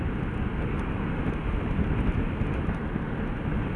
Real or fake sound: real